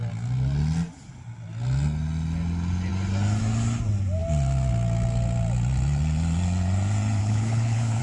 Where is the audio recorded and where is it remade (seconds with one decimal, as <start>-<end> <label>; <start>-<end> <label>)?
0.0-7.2 recorded; 7.2-8.0 remade